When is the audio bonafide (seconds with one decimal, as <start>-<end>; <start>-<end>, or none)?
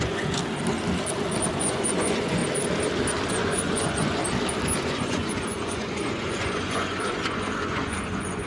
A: 0.4-1.5; 2.4-3.3; 4.2-4.8